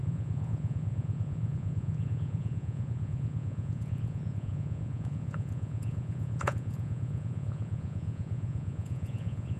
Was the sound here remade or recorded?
remade